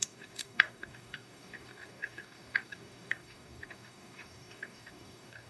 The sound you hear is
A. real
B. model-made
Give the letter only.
B